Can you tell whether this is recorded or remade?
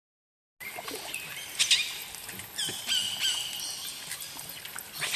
recorded